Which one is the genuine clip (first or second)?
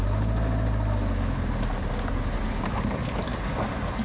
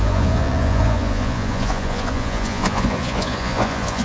first